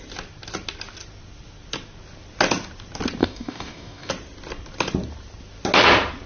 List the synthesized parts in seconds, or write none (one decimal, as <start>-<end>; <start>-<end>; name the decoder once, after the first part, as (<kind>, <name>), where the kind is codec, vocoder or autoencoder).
3.2-4.1 (codec, DAC)

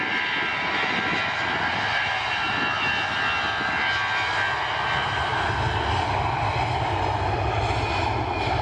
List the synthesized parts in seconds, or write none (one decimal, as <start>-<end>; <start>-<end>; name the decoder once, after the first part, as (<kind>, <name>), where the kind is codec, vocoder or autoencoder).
none

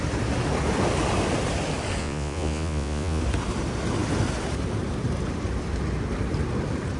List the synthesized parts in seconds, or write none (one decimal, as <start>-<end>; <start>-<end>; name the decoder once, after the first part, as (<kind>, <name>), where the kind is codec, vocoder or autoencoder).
2.0-3.2 (vocoder, Vocos)

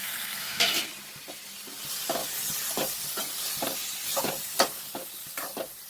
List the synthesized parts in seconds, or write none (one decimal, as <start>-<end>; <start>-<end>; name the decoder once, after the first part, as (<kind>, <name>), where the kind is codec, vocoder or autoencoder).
0.0-0.9 (codec, SNAC)

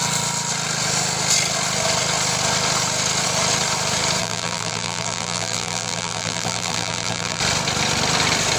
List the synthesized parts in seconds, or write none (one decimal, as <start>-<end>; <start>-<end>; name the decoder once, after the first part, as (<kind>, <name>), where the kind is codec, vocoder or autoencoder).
4.2-7.4 (vocoder, BigVGAN v2)

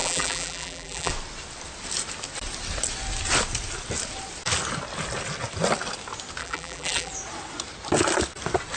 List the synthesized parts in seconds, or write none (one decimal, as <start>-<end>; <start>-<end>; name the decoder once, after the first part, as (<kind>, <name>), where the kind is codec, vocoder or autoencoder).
0.0-1.1 (vocoder, BigVGAN v2); 6.4-7.1